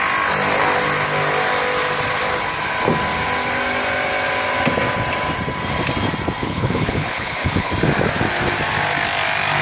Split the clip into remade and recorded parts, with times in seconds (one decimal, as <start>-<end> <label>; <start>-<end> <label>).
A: 0.0-6.4 recorded; 6.4-7.7 remade; 7.7-9.6 recorded